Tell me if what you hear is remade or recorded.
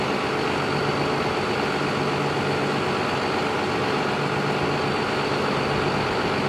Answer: recorded